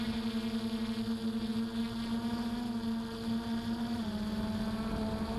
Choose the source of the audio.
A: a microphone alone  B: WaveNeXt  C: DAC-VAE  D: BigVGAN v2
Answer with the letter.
A